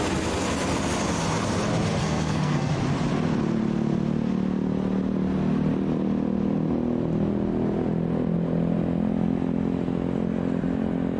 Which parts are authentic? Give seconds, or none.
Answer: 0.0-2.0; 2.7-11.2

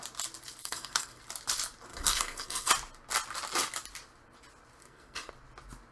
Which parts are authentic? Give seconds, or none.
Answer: 0.0-0.6; 1.2-1.9; 2.7-4.8; 5.3-5.9

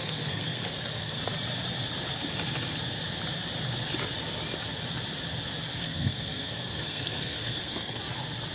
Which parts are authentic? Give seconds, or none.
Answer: 1.2-5.8; 8.0-8.5

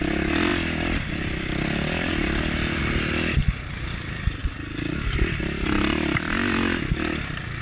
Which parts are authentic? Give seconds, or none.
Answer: 0.0-7.6

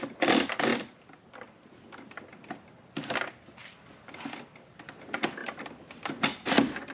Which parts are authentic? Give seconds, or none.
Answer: 0.0-6.9

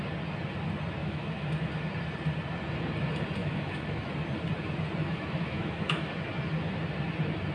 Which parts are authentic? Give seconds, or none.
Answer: 0.0-1.0; 1.7-3.4; 4.1-5.0; 6.1-7.5

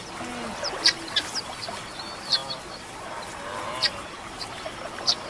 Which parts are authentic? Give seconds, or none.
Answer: 0.0-5.3